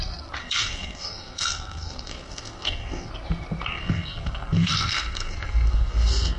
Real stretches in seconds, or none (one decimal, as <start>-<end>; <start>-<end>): 0.0-0.4; 3.1-3.7